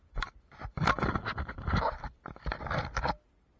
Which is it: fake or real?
real